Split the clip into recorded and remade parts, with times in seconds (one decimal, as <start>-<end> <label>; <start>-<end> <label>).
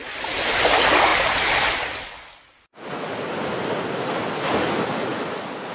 0.0-5.7 recorded